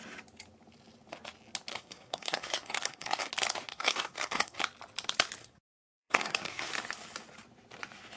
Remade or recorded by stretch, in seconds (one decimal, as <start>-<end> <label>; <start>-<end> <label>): 0.0-1.7 recorded; 1.7-3.3 remade; 3.3-3.7 recorded; 3.7-4.6 remade; 4.6-5.4 recorded; 5.4-6.7 remade; 6.7-8.2 recorded